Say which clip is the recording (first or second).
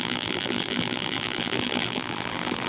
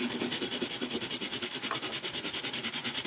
second